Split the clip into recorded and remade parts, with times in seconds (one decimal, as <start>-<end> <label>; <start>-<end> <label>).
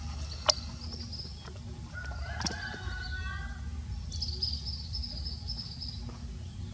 0.0-6.7 recorded